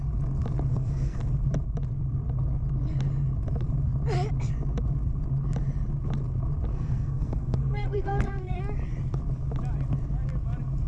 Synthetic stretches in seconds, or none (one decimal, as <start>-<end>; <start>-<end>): 0.7-1.2; 6.7-8.6